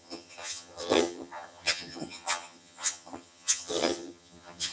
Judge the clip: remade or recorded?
remade